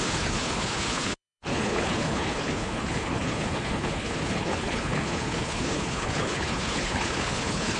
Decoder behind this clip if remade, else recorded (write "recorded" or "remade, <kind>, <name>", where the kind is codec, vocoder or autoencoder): remade, codec, HILCodec